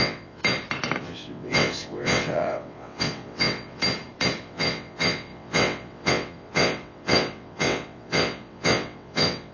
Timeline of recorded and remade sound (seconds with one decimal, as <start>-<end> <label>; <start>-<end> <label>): 0.0-0.4 remade; 0.4-1.0 recorded; 1.0-3.8 remade; 3.8-4.4 recorded; 4.4-9.5 remade